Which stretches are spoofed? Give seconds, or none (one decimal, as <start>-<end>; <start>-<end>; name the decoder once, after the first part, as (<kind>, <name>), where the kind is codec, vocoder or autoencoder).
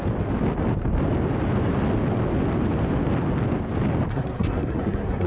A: 4.1-5.3 (codec, SNAC)